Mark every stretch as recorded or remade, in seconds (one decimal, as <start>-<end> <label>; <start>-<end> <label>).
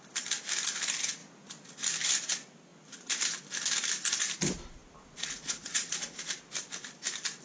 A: 0.0-4.8 recorded; 4.8-6.2 remade; 6.2-7.4 recorded